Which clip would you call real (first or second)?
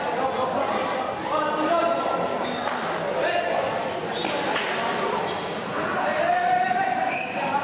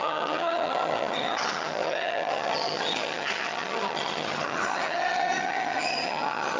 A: first